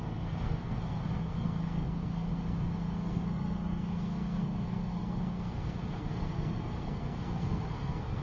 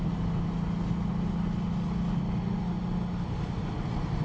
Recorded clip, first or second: second